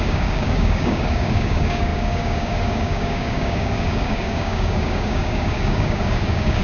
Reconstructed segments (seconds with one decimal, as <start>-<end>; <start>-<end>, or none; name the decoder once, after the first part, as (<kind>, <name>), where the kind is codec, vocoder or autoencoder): 0.0-6.6 (codec, DAC)